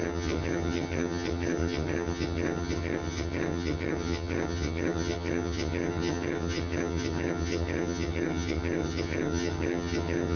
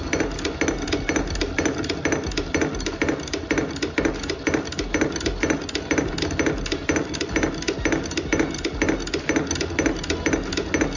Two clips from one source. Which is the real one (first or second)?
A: second